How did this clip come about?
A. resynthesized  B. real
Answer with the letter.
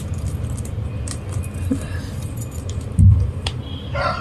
A